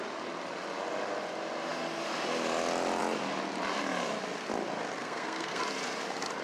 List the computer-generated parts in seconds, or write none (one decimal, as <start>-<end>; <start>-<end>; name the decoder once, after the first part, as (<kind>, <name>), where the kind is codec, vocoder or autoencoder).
5.0-5.6 (codec, SNAC)